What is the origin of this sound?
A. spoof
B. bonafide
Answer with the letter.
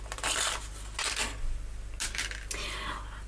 B